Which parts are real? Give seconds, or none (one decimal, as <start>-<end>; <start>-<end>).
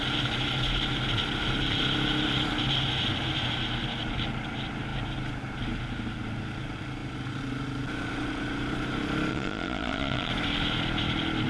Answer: 0.0-9.3; 10.3-11.5